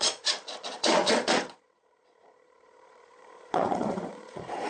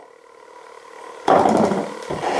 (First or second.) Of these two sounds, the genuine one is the second